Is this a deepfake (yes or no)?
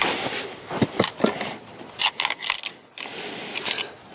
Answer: no